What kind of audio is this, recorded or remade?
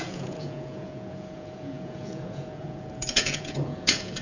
remade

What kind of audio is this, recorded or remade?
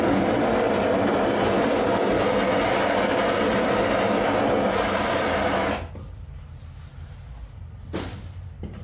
recorded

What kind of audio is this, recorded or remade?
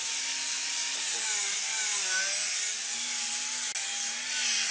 recorded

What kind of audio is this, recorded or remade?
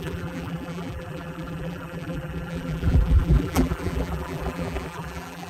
remade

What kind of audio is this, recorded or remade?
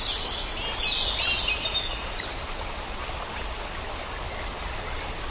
recorded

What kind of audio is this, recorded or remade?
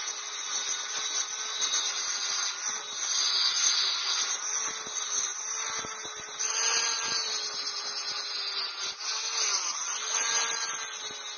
recorded